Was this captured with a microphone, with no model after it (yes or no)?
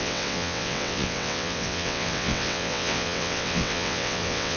no